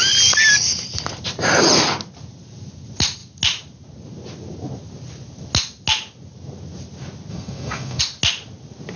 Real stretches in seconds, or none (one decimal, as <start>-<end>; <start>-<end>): 0.0-7.3; 8.0-9.0